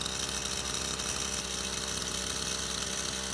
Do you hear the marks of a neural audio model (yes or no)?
no